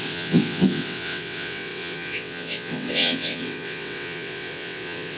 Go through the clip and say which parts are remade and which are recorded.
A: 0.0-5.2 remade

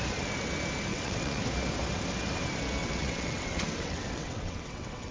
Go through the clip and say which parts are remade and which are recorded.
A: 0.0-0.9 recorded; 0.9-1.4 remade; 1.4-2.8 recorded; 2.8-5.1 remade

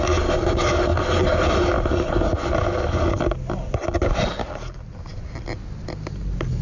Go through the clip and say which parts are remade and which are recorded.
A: 0.0-6.6 recorded

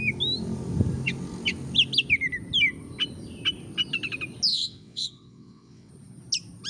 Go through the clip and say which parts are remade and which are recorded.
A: 0.0-4.5 recorded; 4.5-5.9 remade; 5.9-6.7 recorded

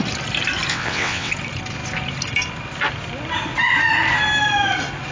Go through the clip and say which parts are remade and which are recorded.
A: 0.0-0.7 recorded; 0.7-1.3 remade; 1.3-5.1 recorded